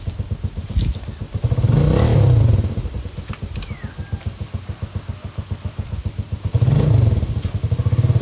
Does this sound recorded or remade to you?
recorded